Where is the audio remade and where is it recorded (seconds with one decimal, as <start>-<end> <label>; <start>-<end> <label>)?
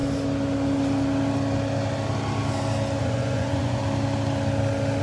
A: 0.0-3.0 recorded; 3.0-3.8 remade; 3.8-5.0 recorded